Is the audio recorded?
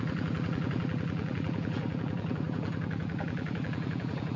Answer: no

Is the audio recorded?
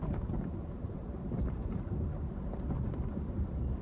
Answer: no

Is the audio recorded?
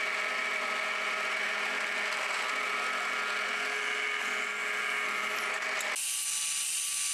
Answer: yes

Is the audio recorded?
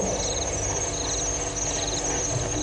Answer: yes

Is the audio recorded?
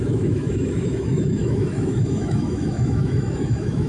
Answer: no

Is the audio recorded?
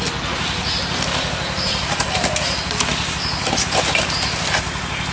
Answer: yes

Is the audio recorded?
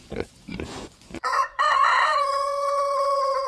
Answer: no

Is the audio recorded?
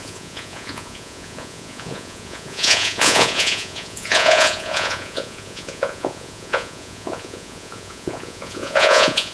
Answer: no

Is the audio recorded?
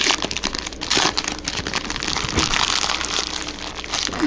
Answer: yes